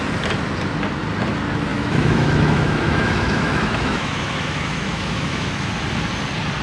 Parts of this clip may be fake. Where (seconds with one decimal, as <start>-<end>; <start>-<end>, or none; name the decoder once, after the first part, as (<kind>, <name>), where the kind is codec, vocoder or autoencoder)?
1.7-5.7 (autoencoder, DAC-VAE)